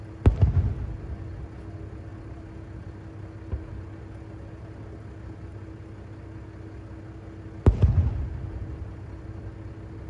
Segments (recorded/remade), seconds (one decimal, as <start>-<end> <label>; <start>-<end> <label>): 0.0-10.1 recorded

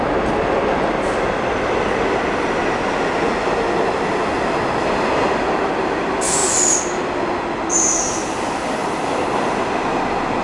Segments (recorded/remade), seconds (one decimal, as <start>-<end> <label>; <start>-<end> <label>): 0.0-8.8 recorded; 8.8-9.6 remade; 9.6-10.4 recorded